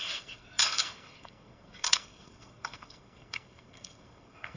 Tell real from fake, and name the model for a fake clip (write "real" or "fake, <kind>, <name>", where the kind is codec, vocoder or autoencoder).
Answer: fake, codec, SNAC